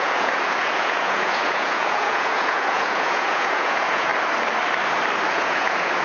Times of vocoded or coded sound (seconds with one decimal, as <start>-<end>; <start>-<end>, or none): 0.0-4.1; 5.3-6.0